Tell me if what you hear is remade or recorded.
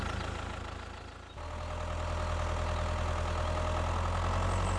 recorded